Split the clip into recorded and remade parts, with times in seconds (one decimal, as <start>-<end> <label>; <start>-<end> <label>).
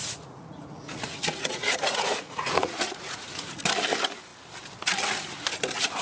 0.0-3.6 remade; 3.6-6.0 recorded